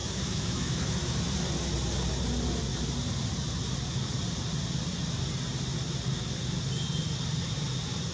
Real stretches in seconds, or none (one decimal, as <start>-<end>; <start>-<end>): 1.2-8.1